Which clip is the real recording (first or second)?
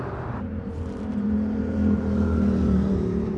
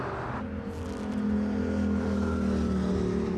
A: second